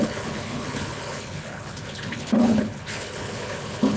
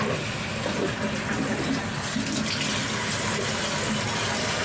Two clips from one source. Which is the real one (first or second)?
second